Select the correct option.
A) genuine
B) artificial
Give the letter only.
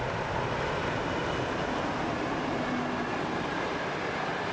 A